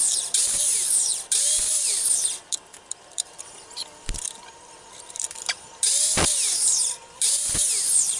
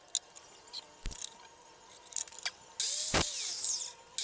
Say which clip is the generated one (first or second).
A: first